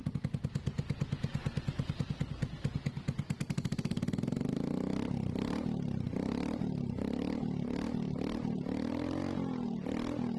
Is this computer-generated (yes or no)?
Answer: no